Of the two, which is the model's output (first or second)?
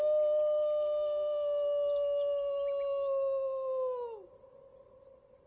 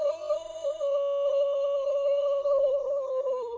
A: second